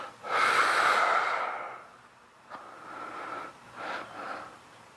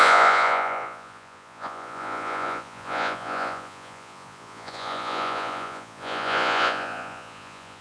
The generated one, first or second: second